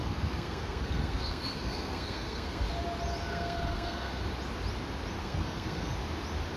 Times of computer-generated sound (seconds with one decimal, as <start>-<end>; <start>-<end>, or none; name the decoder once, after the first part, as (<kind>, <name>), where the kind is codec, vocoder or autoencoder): 0.0-2.7 (codec, SNAC); 3.3-4.2; 5.2-5.9